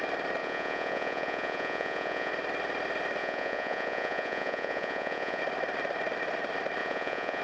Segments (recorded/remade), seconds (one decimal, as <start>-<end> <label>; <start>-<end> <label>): 0.0-0.4 recorded; 0.4-2.3 remade; 2.3-3.2 recorded; 3.2-5.4 remade; 5.4-6.8 recorded; 6.8-7.4 remade